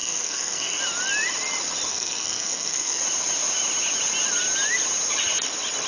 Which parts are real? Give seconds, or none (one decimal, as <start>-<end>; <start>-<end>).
0.8-1.9; 3.0-5.9